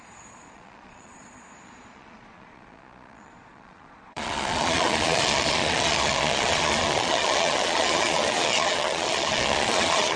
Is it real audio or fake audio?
fake